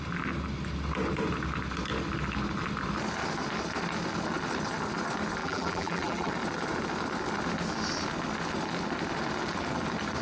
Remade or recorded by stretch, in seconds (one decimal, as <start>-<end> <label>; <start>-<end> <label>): 0.0-5.4 recorded; 5.4-6.3 remade; 6.3-10.2 recorded